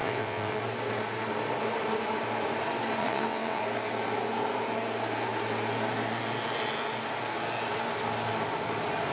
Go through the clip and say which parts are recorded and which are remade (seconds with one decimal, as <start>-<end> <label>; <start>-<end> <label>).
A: 0.0-0.6 remade; 0.6-3.0 recorded; 3.0-3.6 remade; 3.6-9.1 recorded